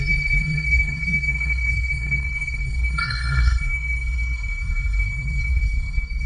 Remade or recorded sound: remade